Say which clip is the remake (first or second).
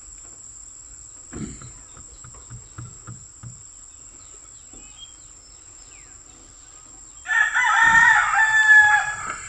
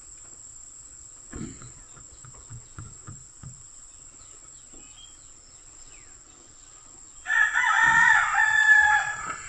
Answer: second